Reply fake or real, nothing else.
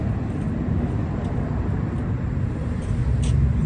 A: real